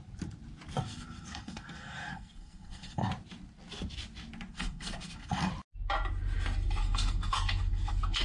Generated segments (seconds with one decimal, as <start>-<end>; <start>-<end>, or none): 0.8-3.1; 4.5-5.5; 6.8-8.2